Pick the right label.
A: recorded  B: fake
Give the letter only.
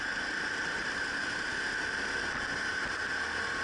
A